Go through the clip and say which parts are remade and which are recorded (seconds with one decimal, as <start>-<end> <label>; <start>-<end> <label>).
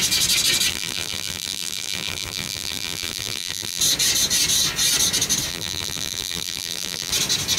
0.0-0.7 recorded; 0.7-3.8 remade; 3.8-5.5 recorded; 5.5-7.1 remade; 7.1-7.6 recorded